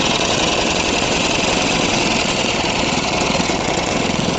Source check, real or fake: fake